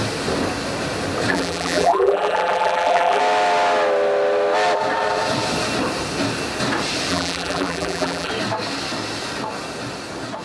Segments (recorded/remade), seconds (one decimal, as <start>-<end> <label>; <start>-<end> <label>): 0.0-1.3 recorded; 1.3-3.2 remade; 3.2-7.1 recorded; 7.1-8.3 remade; 8.3-10.4 recorded